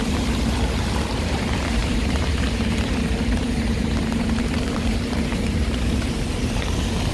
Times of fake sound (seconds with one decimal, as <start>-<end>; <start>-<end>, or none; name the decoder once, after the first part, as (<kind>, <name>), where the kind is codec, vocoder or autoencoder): 1.8-6.1 (vocoder, BigVGAN v2)